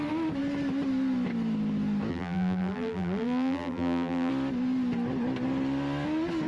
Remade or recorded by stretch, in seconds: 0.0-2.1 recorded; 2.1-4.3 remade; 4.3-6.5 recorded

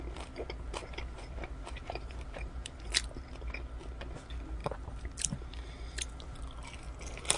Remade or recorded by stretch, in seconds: 0.0-0.8 recorded; 0.8-2.9 remade; 2.9-4.6 recorded; 4.6-5.7 remade; 5.7-7.4 recorded

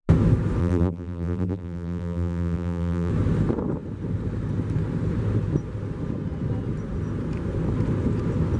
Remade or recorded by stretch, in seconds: 0.0-0.6 recorded; 0.6-3.1 remade; 3.1-8.6 recorded

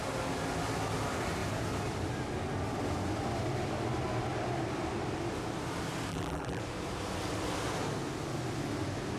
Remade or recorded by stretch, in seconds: 0.0-6.1 recorded; 6.1-6.6 remade; 6.6-9.2 recorded